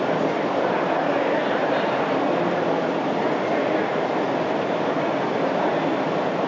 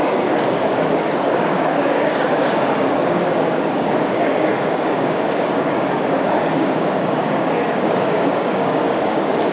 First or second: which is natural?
first